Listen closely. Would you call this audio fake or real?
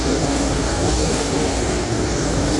fake